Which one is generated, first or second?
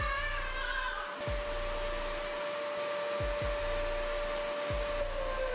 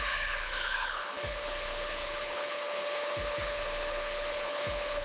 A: second